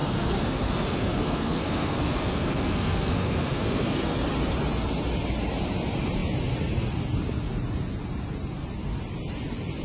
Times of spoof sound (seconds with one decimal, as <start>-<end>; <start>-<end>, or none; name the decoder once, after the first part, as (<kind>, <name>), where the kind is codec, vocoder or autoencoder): 0.0-4.2 (codec, SNAC)